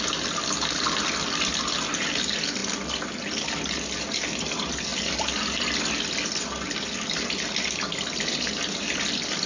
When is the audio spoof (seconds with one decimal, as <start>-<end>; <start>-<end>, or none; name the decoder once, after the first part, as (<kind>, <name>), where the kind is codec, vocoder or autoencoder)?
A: none